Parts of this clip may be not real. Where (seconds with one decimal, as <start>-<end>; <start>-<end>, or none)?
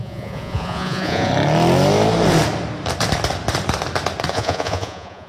0.0-1.3; 4.3-5.3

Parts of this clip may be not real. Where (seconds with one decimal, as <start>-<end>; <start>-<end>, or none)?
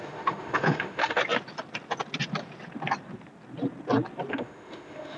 0.0-1.2; 4.3-5.2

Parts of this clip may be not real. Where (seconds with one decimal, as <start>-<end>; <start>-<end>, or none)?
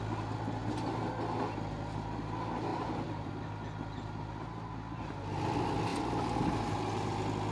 0.6-1.2; 2.7-3.3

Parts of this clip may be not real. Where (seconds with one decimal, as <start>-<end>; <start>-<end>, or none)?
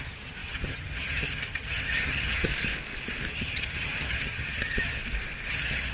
0.0-2.5; 3.3-5.0; 5.5-5.9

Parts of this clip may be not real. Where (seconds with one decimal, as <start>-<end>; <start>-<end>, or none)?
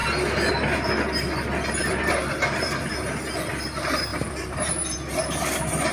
1.8-2.9; 4.1-4.7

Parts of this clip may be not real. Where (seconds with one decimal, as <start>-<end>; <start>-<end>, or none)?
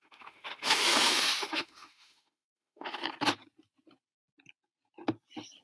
0.0-3.0